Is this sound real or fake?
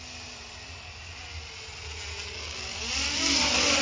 real